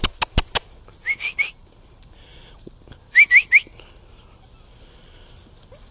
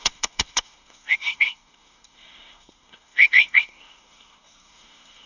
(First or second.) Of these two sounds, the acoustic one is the first